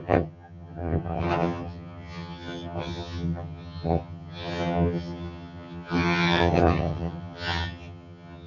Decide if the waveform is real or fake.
fake